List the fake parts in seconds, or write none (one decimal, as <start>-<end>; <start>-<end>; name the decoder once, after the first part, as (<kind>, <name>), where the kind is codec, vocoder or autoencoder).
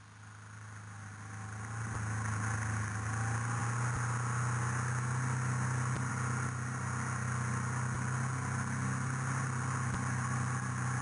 none